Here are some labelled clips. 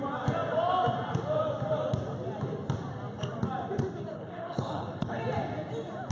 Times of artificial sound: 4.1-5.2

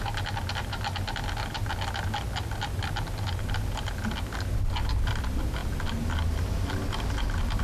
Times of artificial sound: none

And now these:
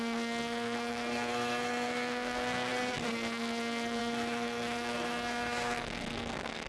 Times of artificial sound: 0.0-6.7